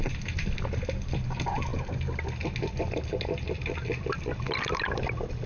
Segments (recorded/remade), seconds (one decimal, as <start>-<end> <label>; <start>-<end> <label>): 0.0-5.5 recorded